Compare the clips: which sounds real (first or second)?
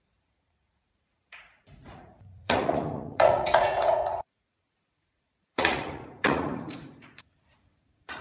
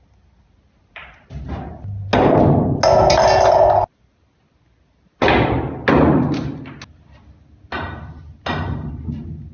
second